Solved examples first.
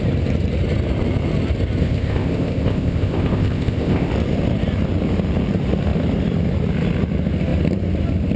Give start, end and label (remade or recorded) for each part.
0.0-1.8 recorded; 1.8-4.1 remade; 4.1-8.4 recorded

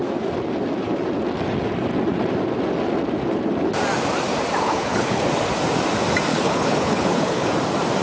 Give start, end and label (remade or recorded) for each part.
0.0-4.6 recorded; 4.6-5.2 remade; 5.2-6.3 recorded; 6.3-7.5 remade; 7.5-8.0 recorded

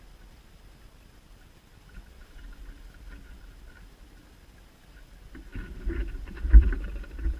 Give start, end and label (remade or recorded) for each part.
0.0-5.6 recorded; 5.6-6.8 remade; 6.8-7.4 recorded